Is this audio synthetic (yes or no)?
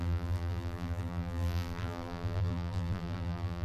yes